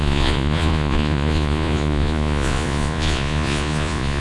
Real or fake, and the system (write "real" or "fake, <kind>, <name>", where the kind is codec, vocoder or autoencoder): fake, vocoder, Vocos